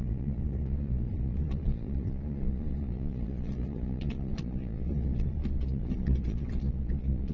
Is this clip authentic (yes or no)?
no